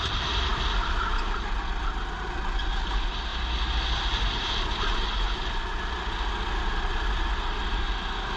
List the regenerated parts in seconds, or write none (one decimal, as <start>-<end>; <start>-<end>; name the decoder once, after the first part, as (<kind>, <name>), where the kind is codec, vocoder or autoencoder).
none